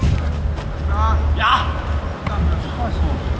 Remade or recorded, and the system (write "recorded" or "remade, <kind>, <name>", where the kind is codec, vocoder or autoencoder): recorded